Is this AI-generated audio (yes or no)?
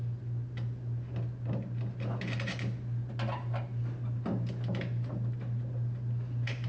no